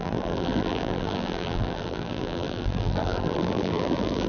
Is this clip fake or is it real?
fake